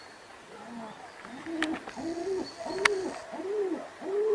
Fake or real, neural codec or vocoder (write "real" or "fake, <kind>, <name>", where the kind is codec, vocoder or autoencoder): real